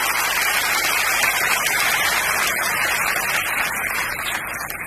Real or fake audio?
real